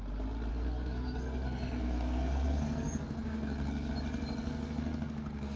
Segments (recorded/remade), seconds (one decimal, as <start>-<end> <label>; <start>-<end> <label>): 0.0-0.5 recorded; 0.5-3.9 remade; 3.9-4.4 recorded; 4.4-5.6 remade